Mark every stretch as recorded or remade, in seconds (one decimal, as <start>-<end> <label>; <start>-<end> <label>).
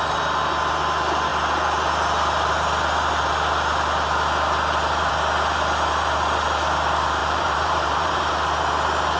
0.0-7.2 recorded; 7.2-8.3 remade; 8.3-9.2 recorded